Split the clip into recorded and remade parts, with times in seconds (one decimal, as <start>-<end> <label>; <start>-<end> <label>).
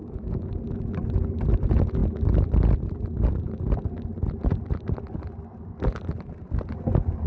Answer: 0.0-0.6 remade; 0.6-7.3 recorded